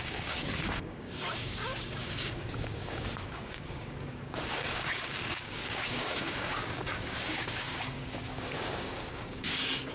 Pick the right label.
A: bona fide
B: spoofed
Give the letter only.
B